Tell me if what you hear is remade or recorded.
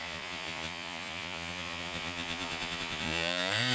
remade